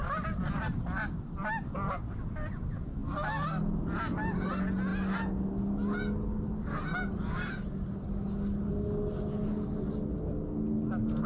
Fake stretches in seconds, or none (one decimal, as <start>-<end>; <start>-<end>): none